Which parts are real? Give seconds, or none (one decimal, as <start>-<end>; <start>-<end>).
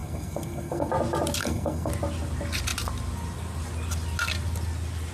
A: 0.9-1.4; 1.9-5.1